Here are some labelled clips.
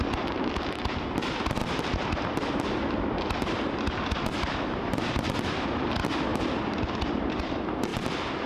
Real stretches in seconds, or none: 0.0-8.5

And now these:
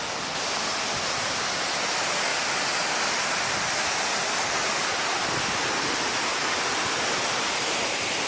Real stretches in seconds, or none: 0.0-8.3

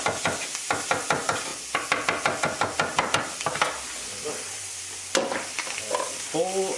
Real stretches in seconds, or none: 0.0-6.8

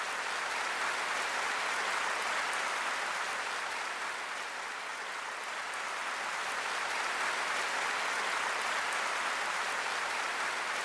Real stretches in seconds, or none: 0.0-10.8

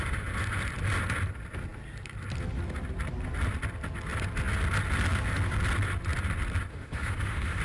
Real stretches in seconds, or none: 0.0-6.7

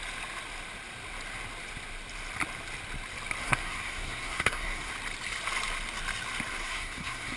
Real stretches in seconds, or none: 0.0-3.4; 4.9-6.6

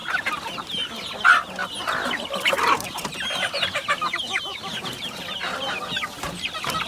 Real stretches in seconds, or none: 0.5-6.9